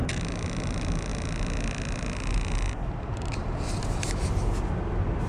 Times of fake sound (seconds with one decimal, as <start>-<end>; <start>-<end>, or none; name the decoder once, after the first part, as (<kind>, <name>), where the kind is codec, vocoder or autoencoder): none